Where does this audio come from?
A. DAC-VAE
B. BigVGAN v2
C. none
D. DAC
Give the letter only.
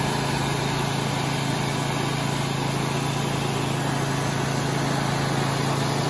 C